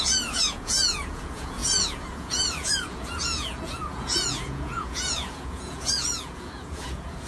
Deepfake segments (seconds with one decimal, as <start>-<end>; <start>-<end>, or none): 0.0-7.3